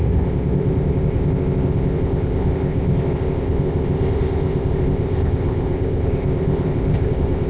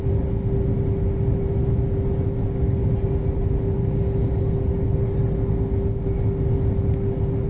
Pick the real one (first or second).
second